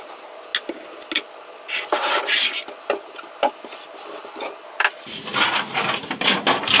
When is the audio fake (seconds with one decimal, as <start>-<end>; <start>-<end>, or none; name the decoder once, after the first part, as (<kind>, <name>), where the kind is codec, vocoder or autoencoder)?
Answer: none